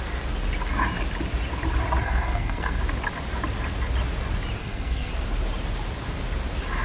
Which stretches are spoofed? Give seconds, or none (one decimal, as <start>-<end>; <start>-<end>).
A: 2.0-2.8; 4.6-5.1